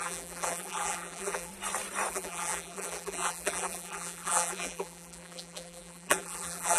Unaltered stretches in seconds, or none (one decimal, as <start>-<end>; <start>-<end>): 1.5-2.1